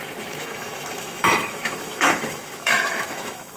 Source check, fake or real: fake